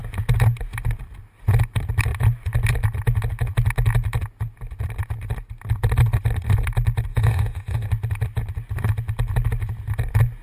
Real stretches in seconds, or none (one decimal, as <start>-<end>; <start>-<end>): 0.0-7.1; 7.9-10.4